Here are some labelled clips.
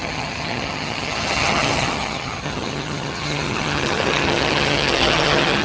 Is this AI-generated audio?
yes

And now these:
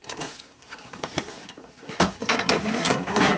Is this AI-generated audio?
yes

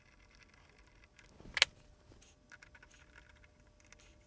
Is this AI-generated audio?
no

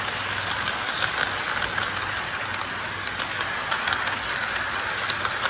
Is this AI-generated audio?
no